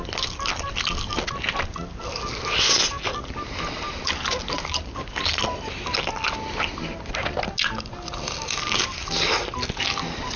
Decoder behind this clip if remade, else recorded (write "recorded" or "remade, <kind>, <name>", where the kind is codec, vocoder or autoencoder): recorded